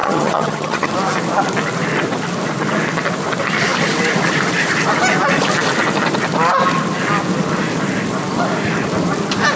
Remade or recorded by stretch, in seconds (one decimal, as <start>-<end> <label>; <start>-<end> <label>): 0.0-0.9 remade; 0.9-9.6 recorded